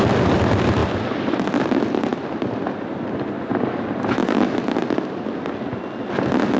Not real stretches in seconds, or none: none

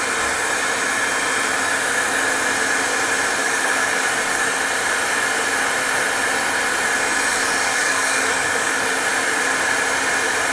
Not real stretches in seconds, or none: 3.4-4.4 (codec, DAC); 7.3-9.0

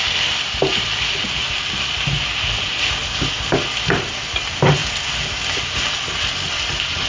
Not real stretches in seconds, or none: none

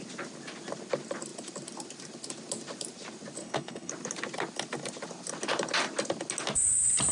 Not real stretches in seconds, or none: 3.4-3.9 (codec, HILCodec)

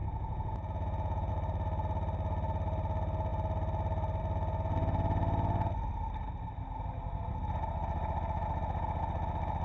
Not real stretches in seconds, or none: 0.0-1.3 (vocoder, Vocos)

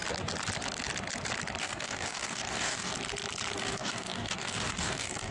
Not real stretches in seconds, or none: 1.6-2.9 (codec, DAC); 3.6-5.3

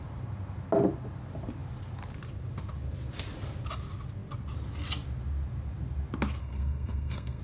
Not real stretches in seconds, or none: 6.4-7.4 (codec, SNAC)